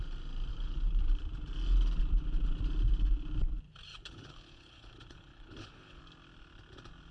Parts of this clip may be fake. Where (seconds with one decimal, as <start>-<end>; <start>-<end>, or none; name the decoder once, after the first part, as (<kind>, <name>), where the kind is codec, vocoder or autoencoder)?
0.5-1.0 (codec, HILCodec); 3.9-6.0